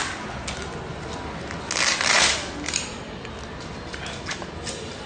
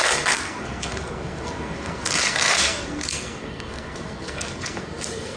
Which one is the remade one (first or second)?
second